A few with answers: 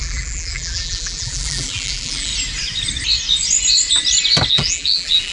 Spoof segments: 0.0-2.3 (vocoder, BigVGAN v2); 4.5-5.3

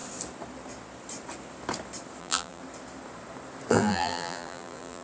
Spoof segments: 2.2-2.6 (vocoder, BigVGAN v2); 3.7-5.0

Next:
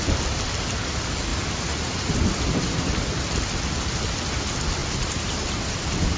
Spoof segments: 1.3-3.4 (vocoder, BigVGAN v2); 4.8-5.8